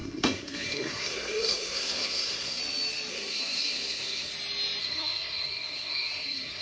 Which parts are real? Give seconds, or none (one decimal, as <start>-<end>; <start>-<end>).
2.6-3.1; 4.3-4.8